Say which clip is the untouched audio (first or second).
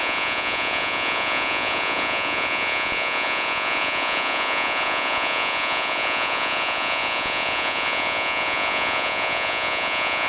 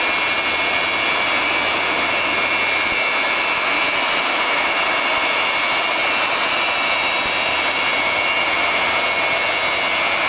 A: second